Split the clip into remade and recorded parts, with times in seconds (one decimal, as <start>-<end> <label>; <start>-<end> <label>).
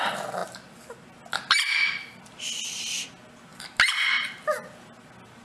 0.0-5.4 recorded